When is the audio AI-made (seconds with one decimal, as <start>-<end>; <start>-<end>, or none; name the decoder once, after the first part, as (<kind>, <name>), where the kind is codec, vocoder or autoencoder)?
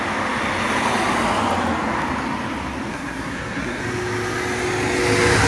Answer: 2.9-3.8 (codec, SNAC)